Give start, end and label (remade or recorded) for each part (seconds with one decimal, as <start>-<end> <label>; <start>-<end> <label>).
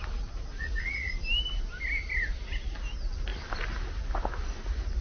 0.0-0.6 recorded; 0.6-1.1 remade; 1.1-5.0 recorded